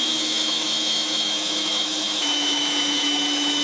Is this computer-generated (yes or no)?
yes